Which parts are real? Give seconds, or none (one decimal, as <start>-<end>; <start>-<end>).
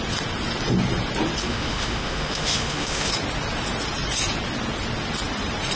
0.0-1.4; 3.1-5.8